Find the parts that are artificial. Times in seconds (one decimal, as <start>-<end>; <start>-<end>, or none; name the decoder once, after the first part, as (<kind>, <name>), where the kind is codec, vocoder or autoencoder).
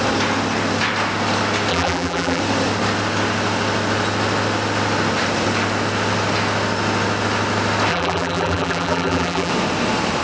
1.7-2.4 (vocoder, BigVGAN v2); 7.9-9.5